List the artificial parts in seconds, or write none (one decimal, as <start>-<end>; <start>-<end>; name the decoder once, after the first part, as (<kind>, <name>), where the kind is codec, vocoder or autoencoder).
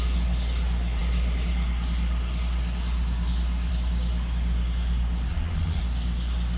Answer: 5.3-5.8 (vocoder, Vocos)